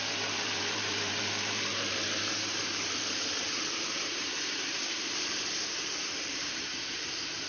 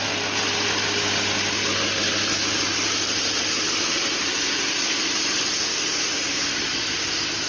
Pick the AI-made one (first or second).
first